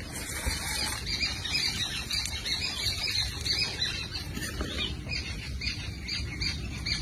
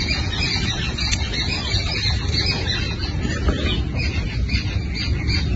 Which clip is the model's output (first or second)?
second